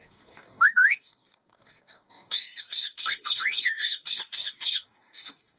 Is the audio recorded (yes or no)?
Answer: no